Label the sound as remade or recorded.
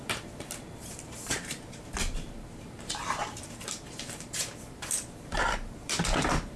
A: remade